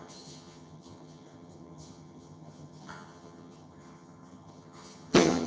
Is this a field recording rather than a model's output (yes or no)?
no